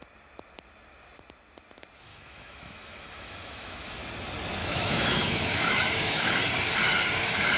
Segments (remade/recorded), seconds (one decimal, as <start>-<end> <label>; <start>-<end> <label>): 0.0-2.1 recorded; 2.1-4.0 remade; 4.0-4.6 recorded; 4.6-6.5 remade; 6.5-7.6 recorded